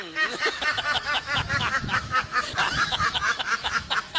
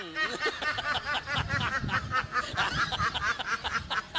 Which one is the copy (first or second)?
first